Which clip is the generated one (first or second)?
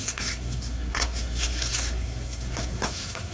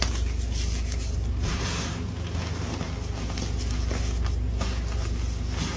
first